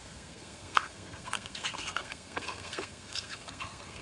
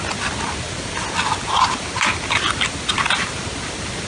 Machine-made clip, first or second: first